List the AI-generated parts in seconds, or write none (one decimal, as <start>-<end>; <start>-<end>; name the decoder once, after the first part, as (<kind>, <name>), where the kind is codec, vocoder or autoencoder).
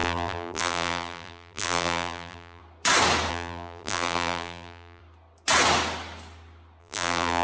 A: 0.0-2.6 (vocoder, BigVGAN v2); 3.3-5.0; 6.8-7.4